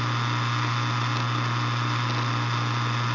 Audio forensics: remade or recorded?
recorded